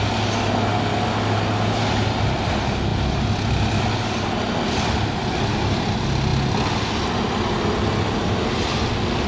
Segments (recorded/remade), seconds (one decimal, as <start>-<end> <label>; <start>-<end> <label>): 0.0-9.3 recorded